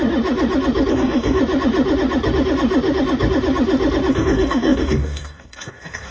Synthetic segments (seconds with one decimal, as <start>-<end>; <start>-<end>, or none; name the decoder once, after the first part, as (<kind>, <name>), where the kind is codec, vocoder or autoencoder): 0.9-1.4 (codec, DAC); 4.1-6.1